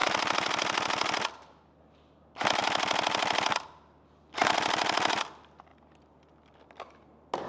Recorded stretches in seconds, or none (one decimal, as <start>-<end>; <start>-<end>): 0.0-7.5